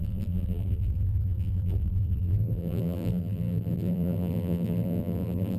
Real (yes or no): no